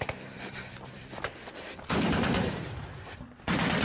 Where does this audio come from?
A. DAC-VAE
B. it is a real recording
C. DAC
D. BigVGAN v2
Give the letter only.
D